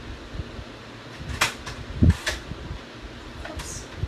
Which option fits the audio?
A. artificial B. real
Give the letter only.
B